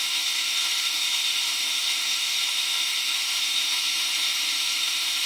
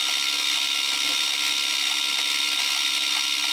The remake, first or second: first